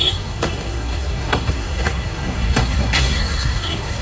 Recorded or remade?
remade